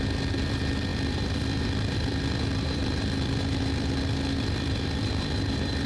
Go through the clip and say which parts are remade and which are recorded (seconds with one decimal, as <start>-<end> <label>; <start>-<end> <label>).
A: 0.0-5.9 remade